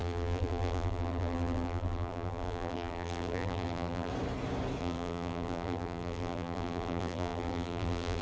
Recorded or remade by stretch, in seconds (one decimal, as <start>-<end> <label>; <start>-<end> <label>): 0.0-4.1 remade; 4.1-4.8 recorded; 4.8-8.2 remade